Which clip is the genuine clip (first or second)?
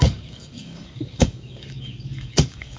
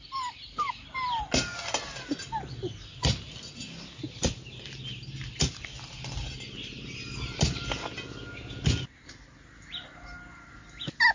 second